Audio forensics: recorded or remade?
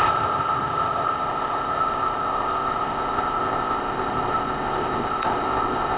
remade